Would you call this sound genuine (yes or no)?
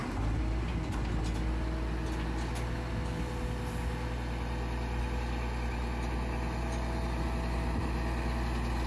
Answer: yes